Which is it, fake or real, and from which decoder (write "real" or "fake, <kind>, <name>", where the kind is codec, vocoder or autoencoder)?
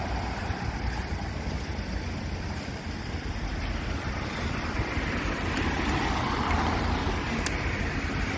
real